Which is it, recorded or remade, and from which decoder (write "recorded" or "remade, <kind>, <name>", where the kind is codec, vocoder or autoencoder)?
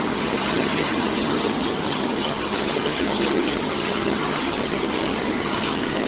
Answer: remade, vocoder, HiFi-GAN